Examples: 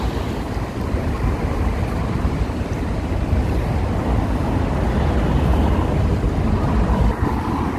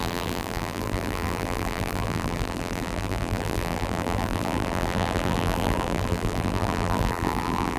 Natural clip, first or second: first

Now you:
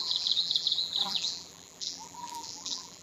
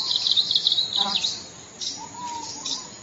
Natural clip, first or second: second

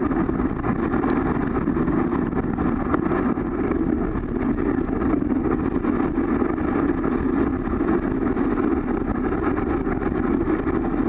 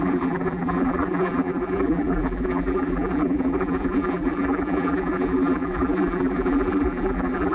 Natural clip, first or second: first